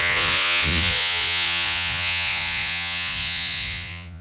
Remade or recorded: remade